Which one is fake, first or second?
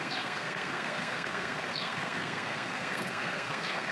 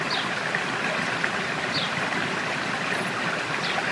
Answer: first